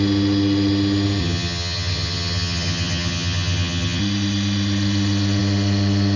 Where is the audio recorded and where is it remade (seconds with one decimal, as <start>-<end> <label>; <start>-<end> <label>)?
0.0-1.2 recorded; 1.2-4.0 remade; 4.0-6.2 recorded